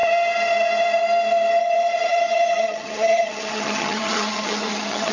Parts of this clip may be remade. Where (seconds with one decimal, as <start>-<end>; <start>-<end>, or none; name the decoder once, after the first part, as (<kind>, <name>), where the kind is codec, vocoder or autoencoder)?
1.6-5.1 (vocoder, HiFi-GAN)